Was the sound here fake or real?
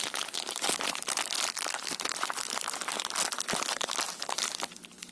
fake